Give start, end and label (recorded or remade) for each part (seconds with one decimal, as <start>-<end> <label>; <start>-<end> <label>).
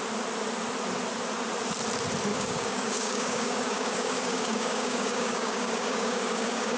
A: 0.0-2.3 recorded; 2.3-6.8 remade